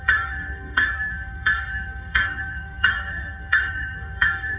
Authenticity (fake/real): fake